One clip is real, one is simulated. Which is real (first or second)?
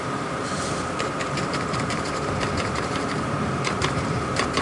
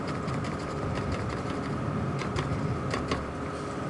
second